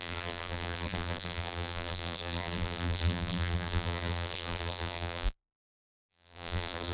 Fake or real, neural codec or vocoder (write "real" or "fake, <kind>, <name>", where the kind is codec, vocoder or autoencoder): fake, vocoder, BigVGAN v2